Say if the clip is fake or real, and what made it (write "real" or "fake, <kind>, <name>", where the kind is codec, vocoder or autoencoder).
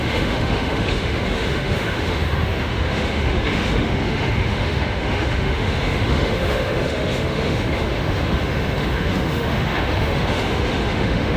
fake, autoencoder, DAC-VAE